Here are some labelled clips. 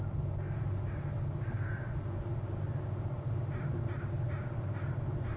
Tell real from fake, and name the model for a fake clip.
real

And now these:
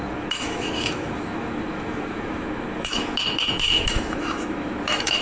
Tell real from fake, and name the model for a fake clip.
fake, autoencoder, DAC-VAE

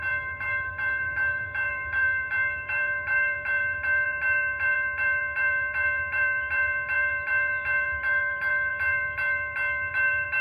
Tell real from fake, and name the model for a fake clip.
fake, vocoder, BigVGAN v2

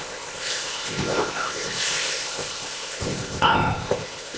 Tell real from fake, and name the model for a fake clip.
fake, codec, ZipCodec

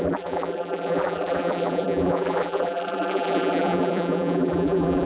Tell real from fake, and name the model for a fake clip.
fake, vocoder, BigVGAN v2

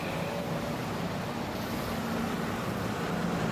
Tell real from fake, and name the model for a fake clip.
fake, vocoder, BigVGAN v2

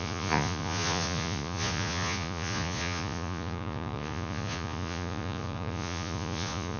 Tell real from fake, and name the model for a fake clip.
fake, vocoder, Vocos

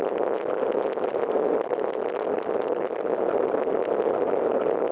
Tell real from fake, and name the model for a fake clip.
real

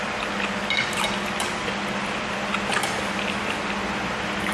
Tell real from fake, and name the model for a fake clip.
real